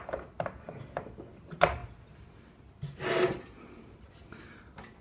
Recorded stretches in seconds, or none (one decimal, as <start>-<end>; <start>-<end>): 0.0-5.0